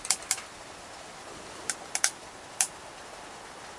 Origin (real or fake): real